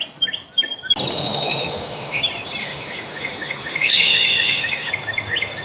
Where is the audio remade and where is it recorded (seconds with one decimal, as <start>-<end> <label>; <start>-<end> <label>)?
0.0-1.1 recorded; 1.1-2.2 remade; 2.2-2.6 recorded; 2.6-4.9 remade; 4.9-5.6 recorded